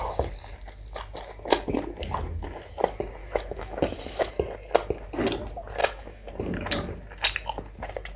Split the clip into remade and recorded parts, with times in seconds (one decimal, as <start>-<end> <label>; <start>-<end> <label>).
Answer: 0.0-3.2 recorded; 3.2-4.3 remade; 4.3-5.8 recorded; 5.8-6.3 remade; 6.3-8.2 recorded